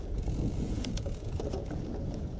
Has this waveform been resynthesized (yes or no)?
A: yes